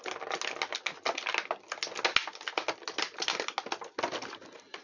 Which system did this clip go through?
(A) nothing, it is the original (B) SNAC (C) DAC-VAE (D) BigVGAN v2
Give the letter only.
A